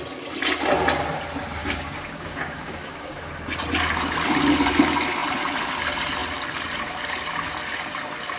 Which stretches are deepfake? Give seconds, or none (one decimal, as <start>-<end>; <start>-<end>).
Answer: 1.6-3.2

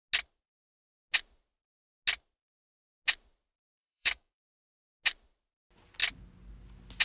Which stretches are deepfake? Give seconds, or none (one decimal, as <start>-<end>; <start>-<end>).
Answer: 3.7-4.5

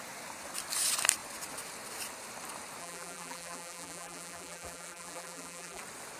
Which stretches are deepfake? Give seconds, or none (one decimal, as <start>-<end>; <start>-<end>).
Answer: 2.8-5.8

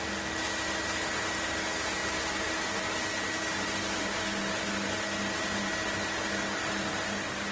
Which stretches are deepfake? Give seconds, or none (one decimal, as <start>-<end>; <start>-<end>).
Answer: none

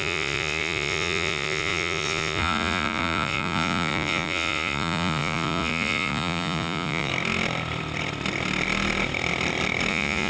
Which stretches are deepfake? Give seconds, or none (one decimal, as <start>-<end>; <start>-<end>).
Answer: 0.0-7.1; 9.9-10.3

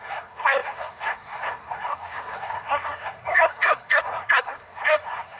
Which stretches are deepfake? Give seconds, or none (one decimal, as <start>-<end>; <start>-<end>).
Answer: 0.0-5.4

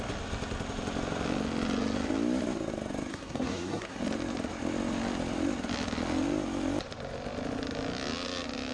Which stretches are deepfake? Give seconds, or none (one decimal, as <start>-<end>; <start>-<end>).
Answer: 3.1-4.0